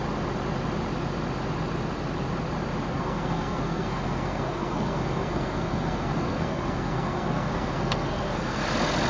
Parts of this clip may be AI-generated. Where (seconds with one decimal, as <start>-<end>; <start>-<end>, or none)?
2.9-8.6